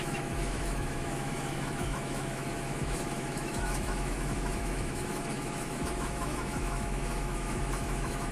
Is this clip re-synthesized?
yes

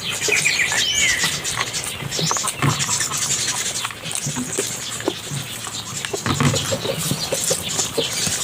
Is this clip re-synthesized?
no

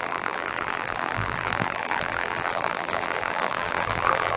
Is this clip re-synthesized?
yes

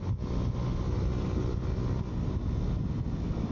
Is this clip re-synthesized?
no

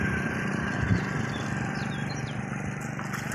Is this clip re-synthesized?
no